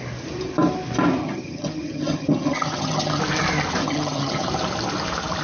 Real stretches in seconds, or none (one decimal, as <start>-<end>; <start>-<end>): 0.0-1.2; 3.2-3.8; 4.5-5.4